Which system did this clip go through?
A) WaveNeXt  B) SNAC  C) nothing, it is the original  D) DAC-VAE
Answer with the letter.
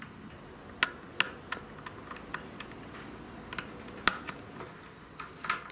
C